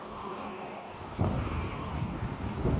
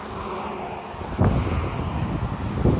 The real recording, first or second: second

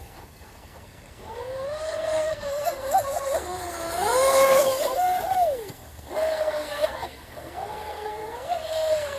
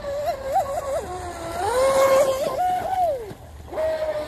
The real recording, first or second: second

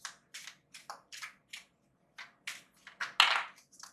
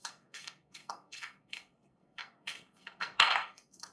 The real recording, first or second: first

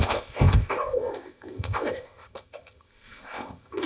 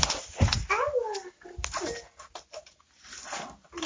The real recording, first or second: second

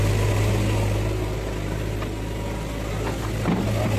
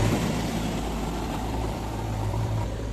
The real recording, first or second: first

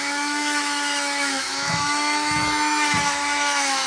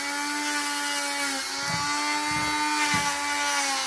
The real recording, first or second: second